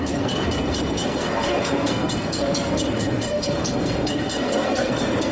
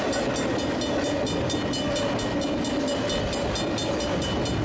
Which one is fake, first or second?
first